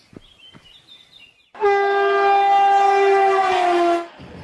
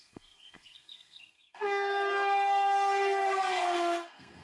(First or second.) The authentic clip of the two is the first